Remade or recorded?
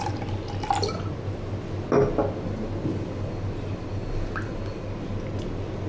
recorded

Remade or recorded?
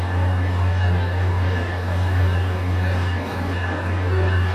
remade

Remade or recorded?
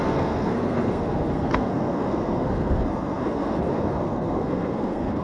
remade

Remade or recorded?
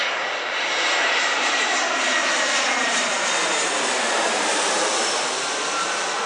remade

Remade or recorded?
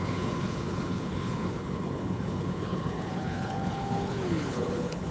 remade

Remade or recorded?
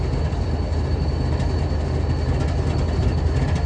recorded